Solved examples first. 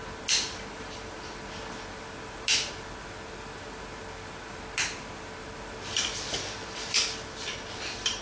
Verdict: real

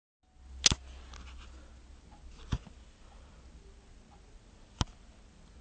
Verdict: real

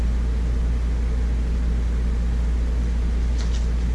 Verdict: real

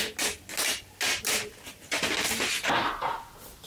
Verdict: real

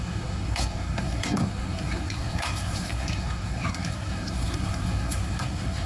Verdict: fake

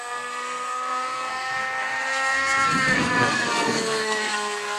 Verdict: fake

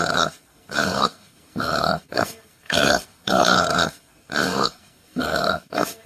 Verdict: fake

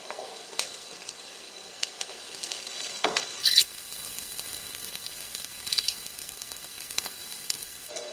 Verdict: fake